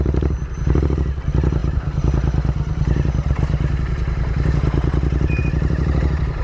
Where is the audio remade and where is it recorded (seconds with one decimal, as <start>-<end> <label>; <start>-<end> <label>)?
0.0-6.4 remade